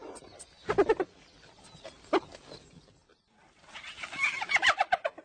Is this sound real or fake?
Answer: real